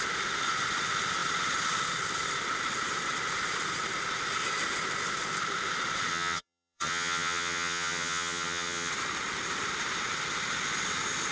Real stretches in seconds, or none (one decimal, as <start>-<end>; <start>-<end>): 0.0-6.1; 8.9-11.3